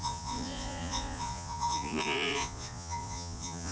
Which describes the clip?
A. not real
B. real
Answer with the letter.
A